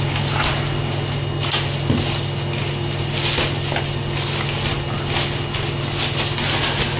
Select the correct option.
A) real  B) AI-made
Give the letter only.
A